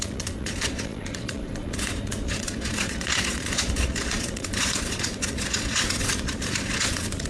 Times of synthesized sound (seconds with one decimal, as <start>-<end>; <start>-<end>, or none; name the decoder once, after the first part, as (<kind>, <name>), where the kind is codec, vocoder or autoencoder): 0.0-7.3 (vocoder, Vocos)